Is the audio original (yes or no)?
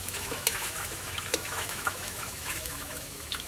no